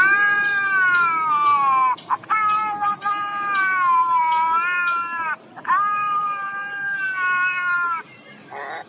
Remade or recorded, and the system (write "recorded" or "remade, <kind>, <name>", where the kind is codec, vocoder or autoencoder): recorded